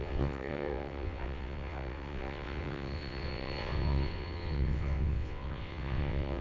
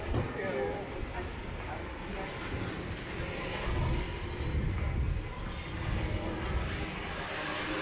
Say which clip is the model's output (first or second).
first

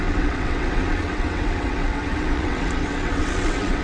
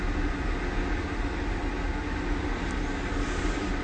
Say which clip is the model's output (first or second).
first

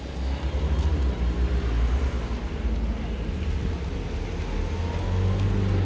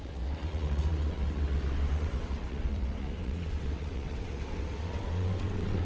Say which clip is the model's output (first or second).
second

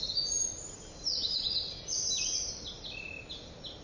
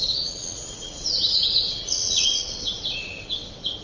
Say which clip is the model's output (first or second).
second